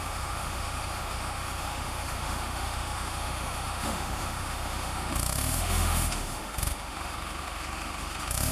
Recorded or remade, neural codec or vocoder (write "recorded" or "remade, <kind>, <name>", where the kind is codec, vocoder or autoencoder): remade, autoencoder, DAC-VAE